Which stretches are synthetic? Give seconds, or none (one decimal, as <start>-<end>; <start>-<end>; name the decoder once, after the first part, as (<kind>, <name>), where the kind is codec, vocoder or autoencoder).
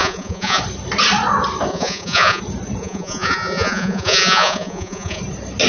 0.0-0.6 (vocoder, Vocos); 1.7-2.4; 2.8-5.2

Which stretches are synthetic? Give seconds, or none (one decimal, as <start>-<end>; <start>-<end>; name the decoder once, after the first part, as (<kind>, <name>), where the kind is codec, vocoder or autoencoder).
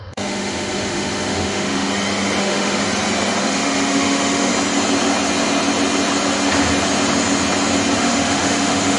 0.0-1.9 (autoencoder, DAC-VAE); 2.4-2.8; 3.4-4.5; 8.0-9.0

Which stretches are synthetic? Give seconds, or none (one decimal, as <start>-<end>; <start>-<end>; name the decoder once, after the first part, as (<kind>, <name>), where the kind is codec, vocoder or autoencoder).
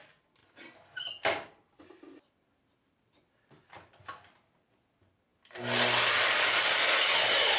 none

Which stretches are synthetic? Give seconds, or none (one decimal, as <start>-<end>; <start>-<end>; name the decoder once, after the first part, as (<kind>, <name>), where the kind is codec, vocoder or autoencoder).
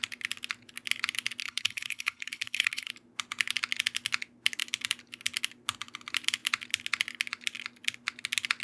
1.4-2.9 (codec, HILCodec)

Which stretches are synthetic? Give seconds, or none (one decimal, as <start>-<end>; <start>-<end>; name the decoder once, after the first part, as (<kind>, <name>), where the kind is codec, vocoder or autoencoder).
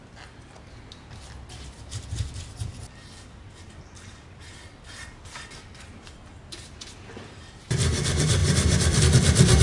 8.4-9.0 (vocoder, BigVGAN v2)